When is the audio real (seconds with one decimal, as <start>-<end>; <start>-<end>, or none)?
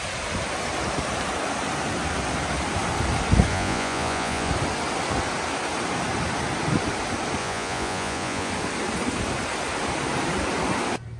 0.0-3.5; 4.5-7.4; 8.5-11.2